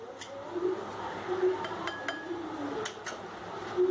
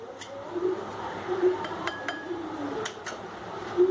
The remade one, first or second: second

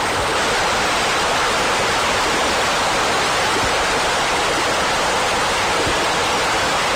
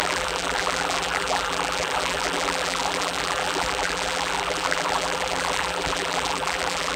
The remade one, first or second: second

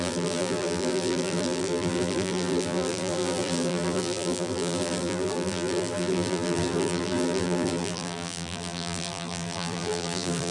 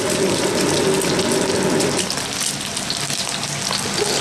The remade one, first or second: first